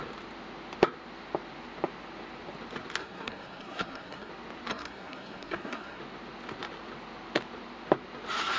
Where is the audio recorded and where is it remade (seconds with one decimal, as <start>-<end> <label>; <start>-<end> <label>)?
0.0-3.0 recorded; 3.0-4.3 remade; 4.3-4.7 recorded; 4.7-6.0 remade; 6.0-8.6 recorded